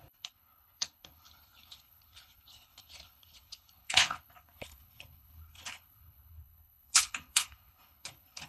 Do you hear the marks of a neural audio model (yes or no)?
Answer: yes